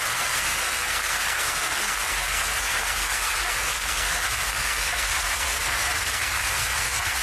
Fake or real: fake